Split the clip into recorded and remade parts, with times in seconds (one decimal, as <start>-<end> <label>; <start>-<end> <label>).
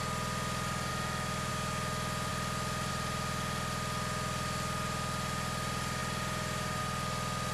0.0-0.9 recorded; 0.9-1.5 remade; 1.5-7.5 recorded